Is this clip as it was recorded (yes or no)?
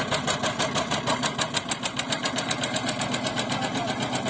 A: yes